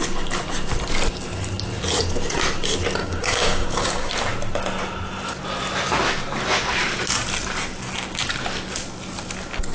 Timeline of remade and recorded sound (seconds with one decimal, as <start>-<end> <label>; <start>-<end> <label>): 0.0-3.0 recorded; 3.0-4.1 remade; 4.1-9.7 recorded